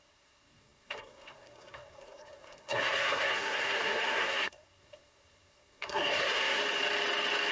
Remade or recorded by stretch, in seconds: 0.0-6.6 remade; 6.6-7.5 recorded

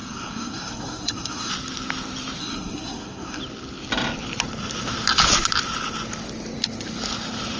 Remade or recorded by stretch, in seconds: 0.0-1.5 remade; 1.5-2.4 recorded; 2.4-3.4 remade; 3.4-7.6 recorded

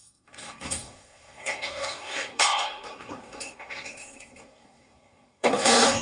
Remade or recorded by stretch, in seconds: 0.0-6.0 remade